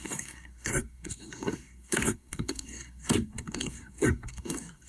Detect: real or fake fake